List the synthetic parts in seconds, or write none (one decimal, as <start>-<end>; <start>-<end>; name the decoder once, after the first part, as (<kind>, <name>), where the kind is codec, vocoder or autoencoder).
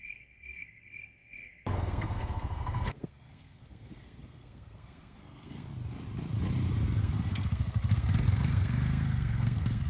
0.0-5.7 (codec, SNAC); 7.0-9.9